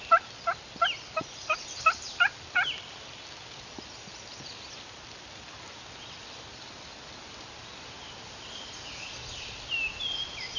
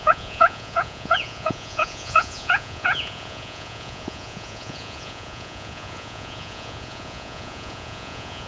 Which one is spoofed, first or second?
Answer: second